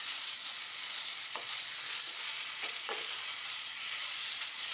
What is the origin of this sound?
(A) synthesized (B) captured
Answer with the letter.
A